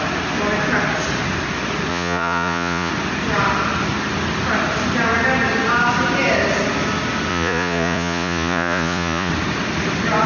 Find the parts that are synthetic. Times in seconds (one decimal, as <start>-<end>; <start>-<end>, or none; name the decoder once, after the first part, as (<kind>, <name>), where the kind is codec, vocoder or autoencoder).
1.9-2.9 (vocoder, Vocos); 7.3-9.3